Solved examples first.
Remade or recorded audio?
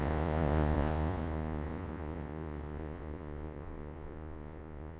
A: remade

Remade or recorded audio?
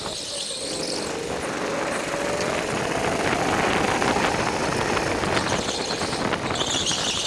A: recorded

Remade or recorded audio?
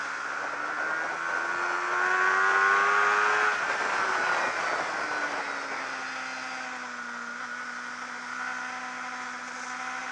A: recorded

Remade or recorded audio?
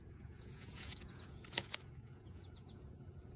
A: remade